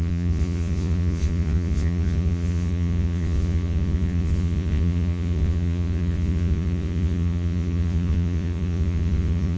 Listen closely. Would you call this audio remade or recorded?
remade